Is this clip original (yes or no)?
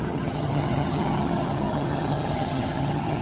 no